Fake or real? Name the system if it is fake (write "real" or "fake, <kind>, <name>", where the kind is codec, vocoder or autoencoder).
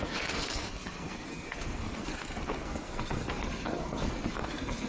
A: fake, codec, SNAC